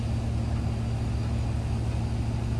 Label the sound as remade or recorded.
recorded